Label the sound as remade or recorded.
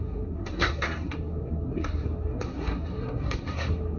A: remade